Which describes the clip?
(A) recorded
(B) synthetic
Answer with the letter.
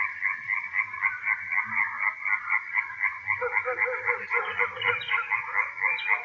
A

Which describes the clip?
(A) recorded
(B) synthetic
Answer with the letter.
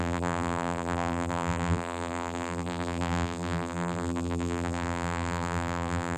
B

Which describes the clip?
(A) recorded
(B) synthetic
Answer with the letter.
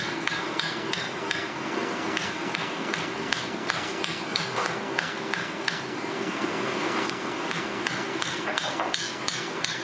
B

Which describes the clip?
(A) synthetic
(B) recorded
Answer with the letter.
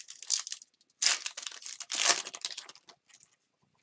B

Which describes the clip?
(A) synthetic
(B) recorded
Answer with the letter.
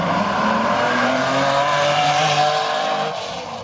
A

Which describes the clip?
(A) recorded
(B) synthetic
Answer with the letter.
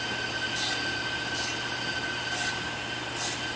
A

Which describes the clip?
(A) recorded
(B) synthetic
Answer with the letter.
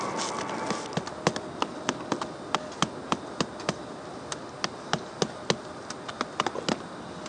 A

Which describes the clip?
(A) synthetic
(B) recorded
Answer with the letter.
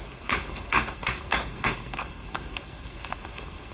A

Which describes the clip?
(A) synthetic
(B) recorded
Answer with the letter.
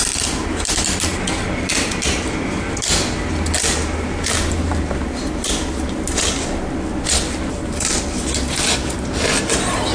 B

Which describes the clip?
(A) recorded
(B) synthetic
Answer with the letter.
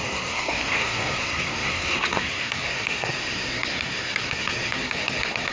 B